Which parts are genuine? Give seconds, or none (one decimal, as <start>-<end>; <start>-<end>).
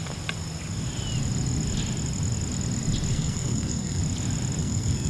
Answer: 0.0-3.1; 4.0-4.6